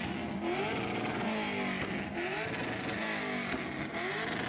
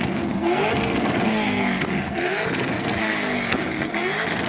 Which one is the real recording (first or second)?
first